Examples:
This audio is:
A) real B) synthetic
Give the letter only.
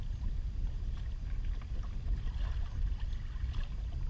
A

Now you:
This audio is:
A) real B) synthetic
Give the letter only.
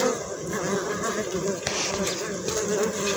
A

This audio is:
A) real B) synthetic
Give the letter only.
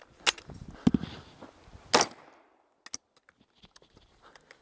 A